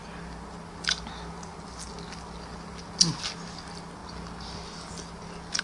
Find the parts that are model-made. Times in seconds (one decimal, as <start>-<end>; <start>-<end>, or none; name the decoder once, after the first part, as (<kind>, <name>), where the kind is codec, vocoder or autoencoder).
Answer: none

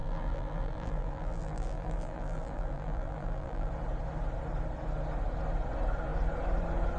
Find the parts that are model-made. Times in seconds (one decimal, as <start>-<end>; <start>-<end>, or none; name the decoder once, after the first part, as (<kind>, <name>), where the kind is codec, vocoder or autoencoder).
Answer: 0.0-3.7 (vocoder, BigVGAN v2)

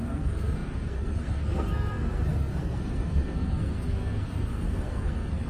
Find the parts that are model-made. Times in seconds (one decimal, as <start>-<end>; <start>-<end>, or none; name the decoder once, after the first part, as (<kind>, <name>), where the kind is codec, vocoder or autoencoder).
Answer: 0.0-5.5 (codec, SNAC)

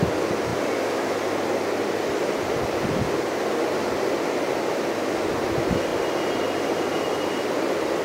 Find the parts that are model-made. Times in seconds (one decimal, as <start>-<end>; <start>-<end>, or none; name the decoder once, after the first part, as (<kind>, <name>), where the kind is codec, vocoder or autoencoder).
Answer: 5.9-7.2 (vocoder, BigVGAN v2)

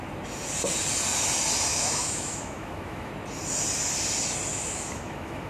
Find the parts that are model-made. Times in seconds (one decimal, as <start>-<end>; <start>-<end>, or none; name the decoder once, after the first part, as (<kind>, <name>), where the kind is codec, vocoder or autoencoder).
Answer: 1.7-3.1 (autoencoder, DAC-VAE); 4.5-5.5

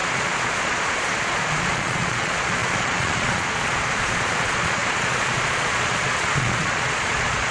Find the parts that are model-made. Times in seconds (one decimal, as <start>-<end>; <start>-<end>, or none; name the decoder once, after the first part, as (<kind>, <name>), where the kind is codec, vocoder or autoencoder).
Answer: 0.0-7.5 (vocoder, Vocos)